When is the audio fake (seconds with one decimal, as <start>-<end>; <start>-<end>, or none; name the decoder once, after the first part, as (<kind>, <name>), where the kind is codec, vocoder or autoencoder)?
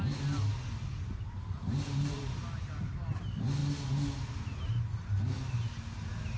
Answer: none